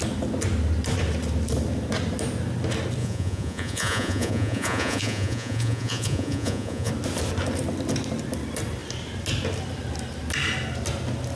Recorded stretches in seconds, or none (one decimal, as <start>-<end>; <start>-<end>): 0.0-3.0; 6.9-11.4